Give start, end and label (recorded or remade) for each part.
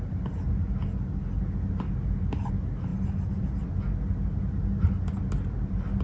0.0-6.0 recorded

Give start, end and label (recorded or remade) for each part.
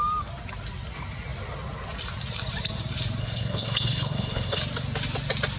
0.0-3.2 recorded; 3.2-4.6 remade; 4.6-5.6 recorded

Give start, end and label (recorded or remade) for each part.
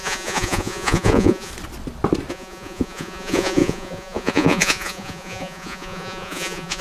0.0-1.5 remade; 1.5-2.3 recorded; 2.3-6.8 remade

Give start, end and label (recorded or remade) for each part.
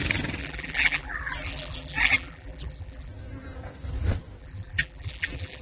0.0-0.4 recorded; 0.4-3.1 remade; 3.1-4.4 recorded; 4.4-5.6 remade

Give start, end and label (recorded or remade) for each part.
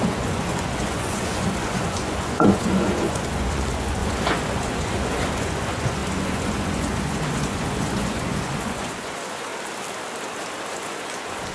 0.0-9.5 remade; 9.5-10.7 recorded; 10.7-11.5 remade